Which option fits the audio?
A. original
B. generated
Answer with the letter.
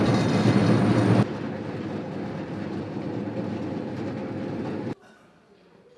A